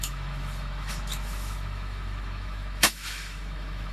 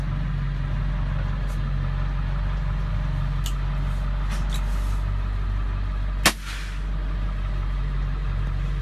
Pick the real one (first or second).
second